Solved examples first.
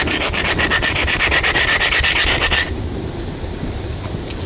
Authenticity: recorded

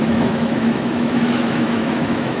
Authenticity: remade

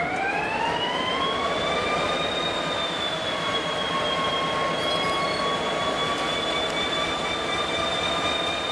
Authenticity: recorded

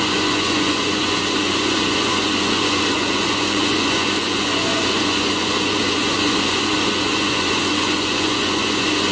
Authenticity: remade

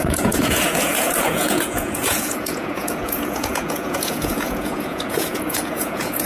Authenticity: remade